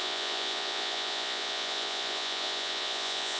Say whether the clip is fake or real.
fake